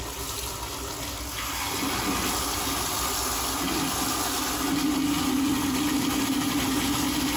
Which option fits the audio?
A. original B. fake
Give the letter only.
A